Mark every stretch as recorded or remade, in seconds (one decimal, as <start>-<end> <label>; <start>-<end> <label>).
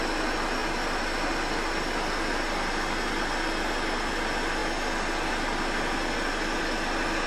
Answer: 0.0-7.3 recorded